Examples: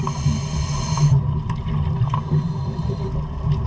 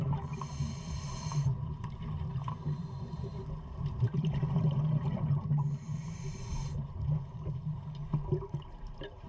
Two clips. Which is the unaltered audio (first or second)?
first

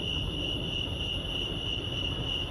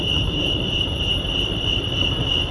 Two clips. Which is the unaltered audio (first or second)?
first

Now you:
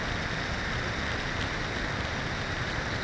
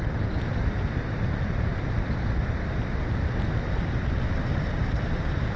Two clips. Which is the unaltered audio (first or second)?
first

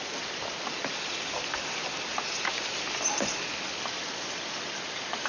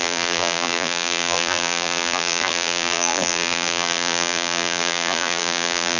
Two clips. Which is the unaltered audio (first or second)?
first